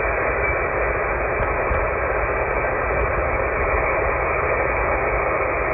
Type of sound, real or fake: real